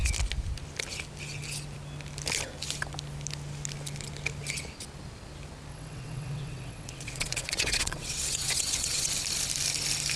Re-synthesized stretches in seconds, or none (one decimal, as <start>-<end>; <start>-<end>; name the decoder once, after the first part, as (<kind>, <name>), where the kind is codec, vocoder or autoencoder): 5.7-9.1 (vocoder, WaveNeXt)